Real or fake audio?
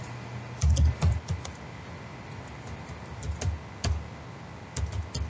real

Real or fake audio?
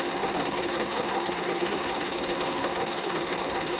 fake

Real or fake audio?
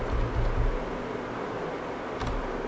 real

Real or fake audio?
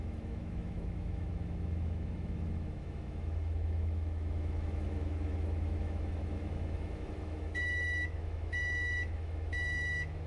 fake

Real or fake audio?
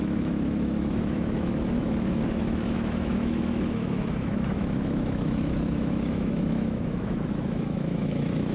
fake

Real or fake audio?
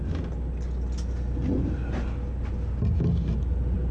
real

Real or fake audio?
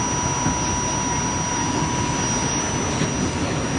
real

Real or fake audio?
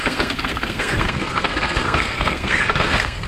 fake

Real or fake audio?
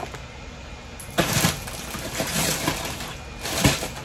real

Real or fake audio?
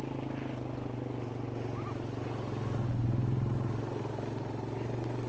real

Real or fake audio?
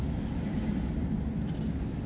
real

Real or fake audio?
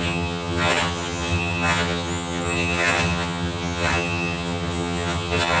fake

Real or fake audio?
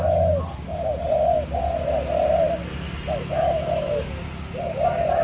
real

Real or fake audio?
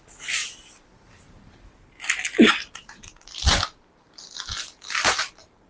real